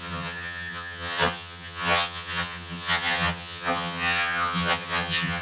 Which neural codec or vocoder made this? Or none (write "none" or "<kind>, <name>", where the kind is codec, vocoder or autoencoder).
vocoder, HiFi-GAN